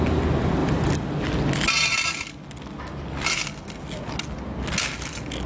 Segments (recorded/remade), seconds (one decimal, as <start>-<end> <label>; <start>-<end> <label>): 0.0-5.5 recorded